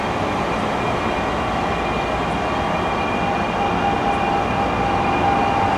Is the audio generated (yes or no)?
no